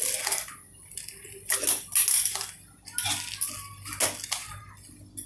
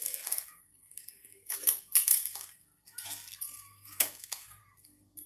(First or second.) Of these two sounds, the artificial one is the second